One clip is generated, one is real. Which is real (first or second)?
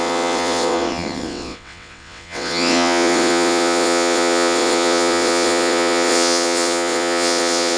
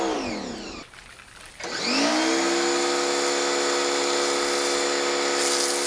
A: second